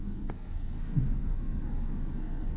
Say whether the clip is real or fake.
fake